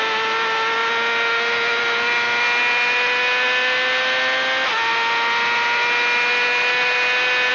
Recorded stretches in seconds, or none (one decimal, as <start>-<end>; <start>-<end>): 0.0-7.5